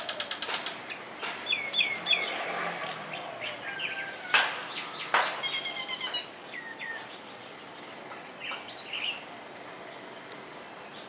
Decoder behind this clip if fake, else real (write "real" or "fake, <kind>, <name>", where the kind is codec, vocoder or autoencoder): real